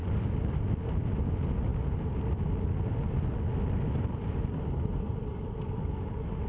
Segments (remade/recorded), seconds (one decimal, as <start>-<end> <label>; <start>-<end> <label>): 0.0-6.5 recorded